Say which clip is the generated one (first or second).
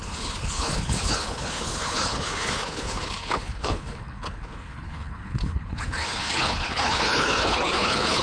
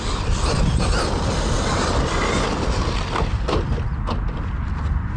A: first